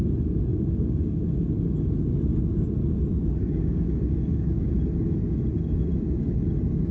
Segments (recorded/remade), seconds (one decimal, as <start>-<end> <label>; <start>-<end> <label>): 0.0-0.5 recorded; 0.5-1.5 remade; 1.5-3.4 recorded; 3.4-4.7 remade; 4.7-6.9 recorded